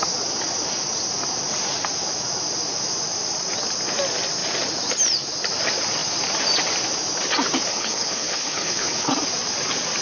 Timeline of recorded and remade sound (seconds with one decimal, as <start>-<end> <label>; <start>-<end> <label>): 0.0-7.7 recorded; 7.7-9.1 remade; 9.1-10.0 recorded